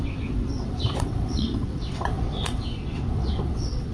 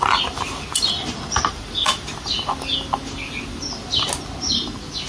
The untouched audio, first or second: second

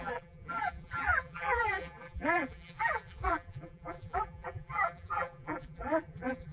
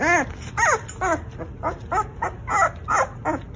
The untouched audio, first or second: second